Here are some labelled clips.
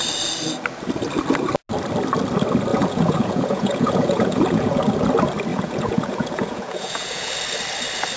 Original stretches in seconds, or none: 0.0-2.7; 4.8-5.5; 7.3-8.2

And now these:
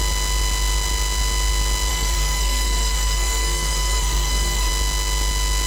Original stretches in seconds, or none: 0.0-1.9; 4.7-5.7

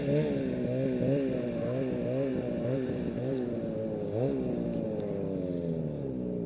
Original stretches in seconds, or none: 0.0-2.3; 3.6-6.5